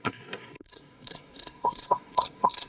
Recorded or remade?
remade